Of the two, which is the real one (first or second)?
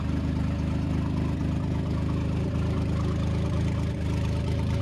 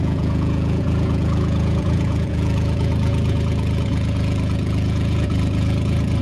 first